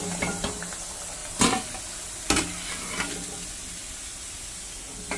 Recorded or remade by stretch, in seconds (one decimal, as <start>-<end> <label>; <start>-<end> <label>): 0.0-0.6 remade; 0.6-5.2 recorded